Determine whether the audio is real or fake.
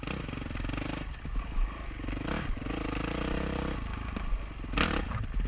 real